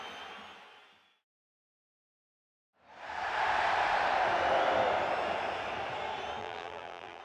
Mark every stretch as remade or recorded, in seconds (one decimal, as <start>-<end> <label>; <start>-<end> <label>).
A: 0.0-6.4 recorded; 6.4-7.2 remade